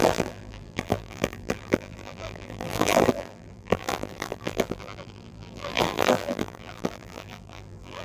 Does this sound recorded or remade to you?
remade